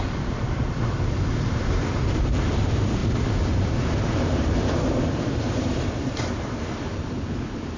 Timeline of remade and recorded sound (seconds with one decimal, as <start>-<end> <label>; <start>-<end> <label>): 0.0-7.8 remade